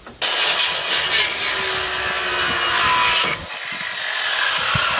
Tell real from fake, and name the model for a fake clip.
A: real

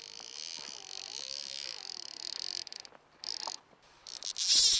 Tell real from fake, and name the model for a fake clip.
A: real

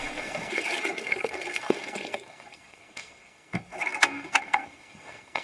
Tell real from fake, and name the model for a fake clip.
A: fake, codec, SNAC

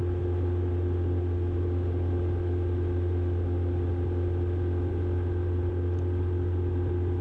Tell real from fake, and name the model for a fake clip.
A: real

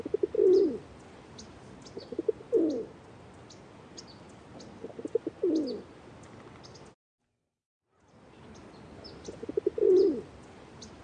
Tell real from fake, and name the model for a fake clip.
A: real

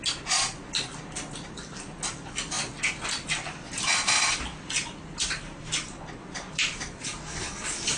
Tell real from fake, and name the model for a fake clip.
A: real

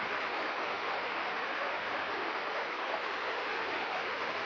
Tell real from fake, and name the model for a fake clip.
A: fake, autoencoder, DAC-VAE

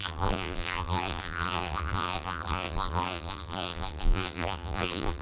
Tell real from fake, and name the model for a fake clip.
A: fake, vocoder, BigVGAN v2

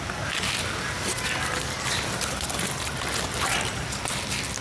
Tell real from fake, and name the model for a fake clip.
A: real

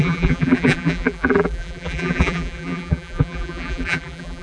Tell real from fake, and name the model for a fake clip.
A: fake, vocoder, BigVGAN v2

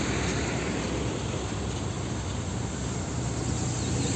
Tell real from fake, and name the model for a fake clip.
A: real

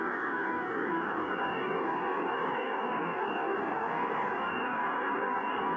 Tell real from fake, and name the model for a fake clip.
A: fake, codec, DAC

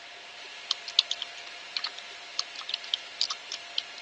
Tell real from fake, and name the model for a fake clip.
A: real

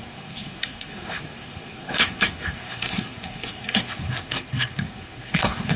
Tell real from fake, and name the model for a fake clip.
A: fake, codec, SNAC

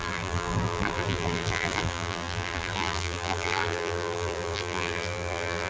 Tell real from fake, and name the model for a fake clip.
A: fake, vocoder, BigVGAN v2